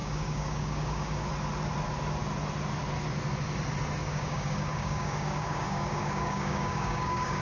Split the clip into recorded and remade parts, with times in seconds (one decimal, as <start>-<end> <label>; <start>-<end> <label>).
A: 0.0-1.3 remade; 1.3-4.0 recorded; 4.0-7.4 remade